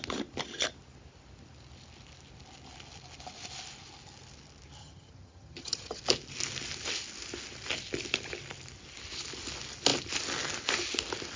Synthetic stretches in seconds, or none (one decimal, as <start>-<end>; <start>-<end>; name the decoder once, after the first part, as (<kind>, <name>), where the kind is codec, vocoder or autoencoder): 4.8-6.0 (vocoder, HiFi-GAN)